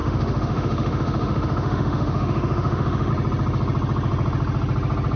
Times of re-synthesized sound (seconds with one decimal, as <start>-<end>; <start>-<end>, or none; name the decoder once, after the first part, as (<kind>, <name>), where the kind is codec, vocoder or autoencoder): 0.0-3.1 (autoencoder, DAC-VAE)